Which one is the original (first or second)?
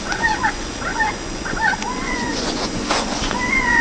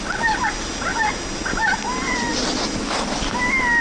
second